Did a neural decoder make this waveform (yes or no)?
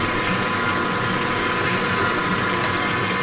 no